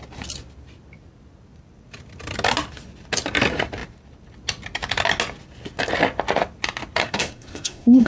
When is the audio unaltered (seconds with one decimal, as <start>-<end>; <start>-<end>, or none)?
0.0-7.0